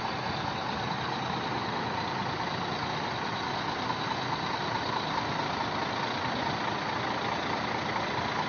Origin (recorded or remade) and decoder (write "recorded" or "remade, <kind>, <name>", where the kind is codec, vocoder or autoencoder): recorded